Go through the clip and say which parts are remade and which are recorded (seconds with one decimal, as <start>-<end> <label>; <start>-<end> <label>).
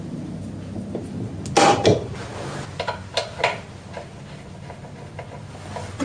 0.0-6.0 recorded